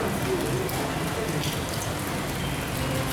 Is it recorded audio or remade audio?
recorded